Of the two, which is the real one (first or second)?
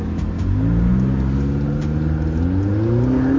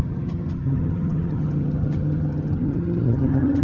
first